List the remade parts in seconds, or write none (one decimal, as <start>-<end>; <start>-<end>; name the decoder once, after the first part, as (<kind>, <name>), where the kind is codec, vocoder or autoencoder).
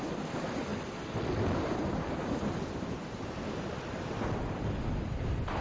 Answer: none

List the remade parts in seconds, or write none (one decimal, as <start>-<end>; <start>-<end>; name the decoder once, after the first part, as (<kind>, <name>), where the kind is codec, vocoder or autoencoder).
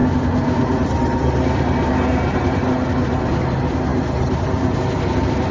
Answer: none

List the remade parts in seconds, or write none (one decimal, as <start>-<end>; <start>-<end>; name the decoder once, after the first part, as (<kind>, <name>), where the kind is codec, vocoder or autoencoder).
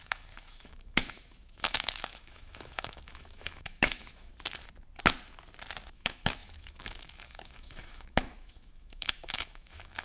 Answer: 0.0-4.3 (autoencoder, DAC-VAE); 5.9-10.0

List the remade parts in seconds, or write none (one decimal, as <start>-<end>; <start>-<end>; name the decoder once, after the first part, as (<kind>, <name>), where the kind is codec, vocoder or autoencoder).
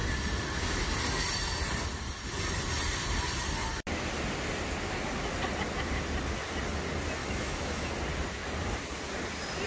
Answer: 7.2-7.9 (autoencoder, DAC-VAE)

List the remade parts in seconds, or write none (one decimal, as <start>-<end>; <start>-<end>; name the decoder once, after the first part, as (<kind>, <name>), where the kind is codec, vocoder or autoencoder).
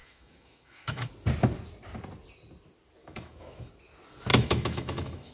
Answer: 0.0-1.1 (autoencoder, DAC-VAE); 3.0-3.7; 4.3-5.3